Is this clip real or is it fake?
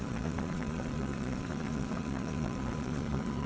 fake